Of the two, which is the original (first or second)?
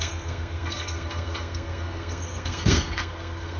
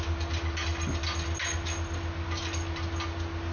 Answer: second